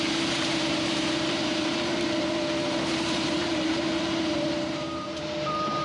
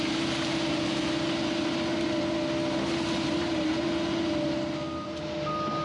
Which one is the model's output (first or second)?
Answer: first